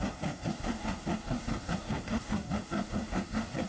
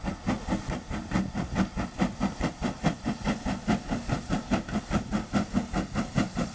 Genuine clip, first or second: second